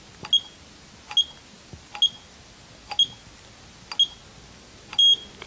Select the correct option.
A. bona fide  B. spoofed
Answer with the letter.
A